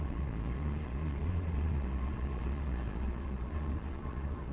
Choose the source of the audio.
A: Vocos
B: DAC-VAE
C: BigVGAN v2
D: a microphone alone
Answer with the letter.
A